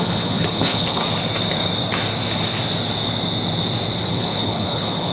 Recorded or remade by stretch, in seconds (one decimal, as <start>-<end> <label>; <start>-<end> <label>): 0.0-1.0 remade; 1.0-4.1 recorded; 4.1-5.1 remade